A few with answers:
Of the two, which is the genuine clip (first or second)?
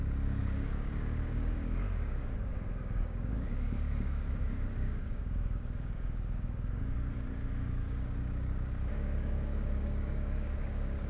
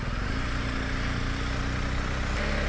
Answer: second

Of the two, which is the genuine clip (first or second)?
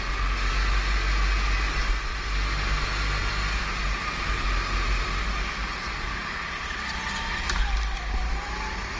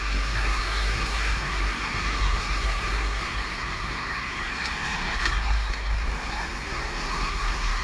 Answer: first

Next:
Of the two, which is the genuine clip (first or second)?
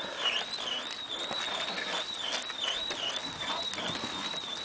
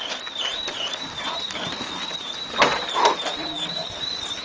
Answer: first